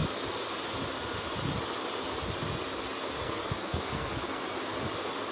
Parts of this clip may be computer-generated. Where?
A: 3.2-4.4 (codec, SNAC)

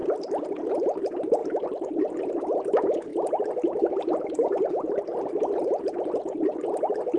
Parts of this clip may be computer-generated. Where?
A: none